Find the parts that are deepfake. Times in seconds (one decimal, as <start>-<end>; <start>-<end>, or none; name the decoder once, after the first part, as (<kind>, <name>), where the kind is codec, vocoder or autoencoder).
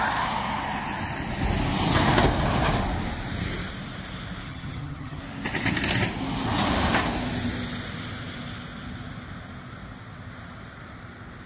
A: 4.5-5.2 (vocoder, HiFi-GAN)